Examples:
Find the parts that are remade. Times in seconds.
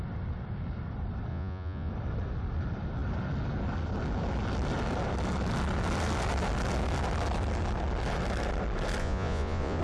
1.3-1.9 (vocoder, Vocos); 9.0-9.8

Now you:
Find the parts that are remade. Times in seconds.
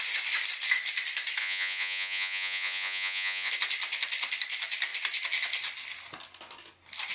1.4-3.5 (vocoder, Vocos)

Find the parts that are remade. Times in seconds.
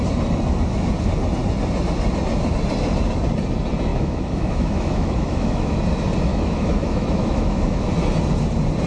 3.9-5.8 (autoencoder, DAC-VAE); 6.3-7.9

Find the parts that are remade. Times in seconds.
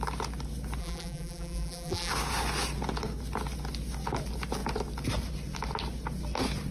0.8-2.1 (vocoder, BigVGAN v2)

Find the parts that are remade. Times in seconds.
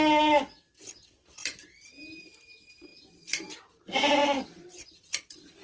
1.4-1.9 (vocoder, BigVGAN v2); 2.9-3.6; 4.2-5.0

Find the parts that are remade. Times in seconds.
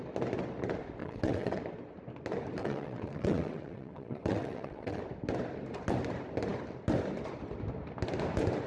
1.0-1.6 (vocoder, WaveNeXt); 2.6-5.0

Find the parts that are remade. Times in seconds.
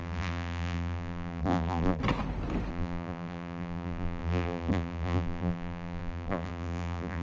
0.0-2.0 (vocoder, BigVGAN v2); 2.7-7.2